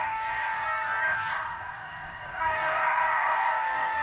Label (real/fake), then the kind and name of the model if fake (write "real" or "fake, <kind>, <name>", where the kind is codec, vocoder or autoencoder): fake, codec, DAC